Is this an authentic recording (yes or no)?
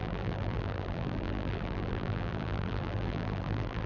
no